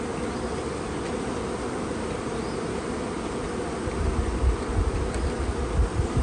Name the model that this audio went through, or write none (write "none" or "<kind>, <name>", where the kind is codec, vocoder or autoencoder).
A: none